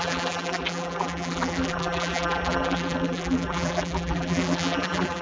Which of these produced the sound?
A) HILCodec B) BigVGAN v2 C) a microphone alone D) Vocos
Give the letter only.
B